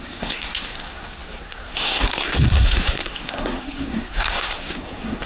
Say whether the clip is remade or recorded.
remade